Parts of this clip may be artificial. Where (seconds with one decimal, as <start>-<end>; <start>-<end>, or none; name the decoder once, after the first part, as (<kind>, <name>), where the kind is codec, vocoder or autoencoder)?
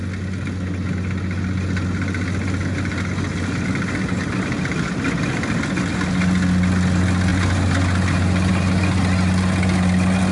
none